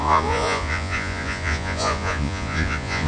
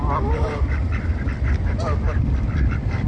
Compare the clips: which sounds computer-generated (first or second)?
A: first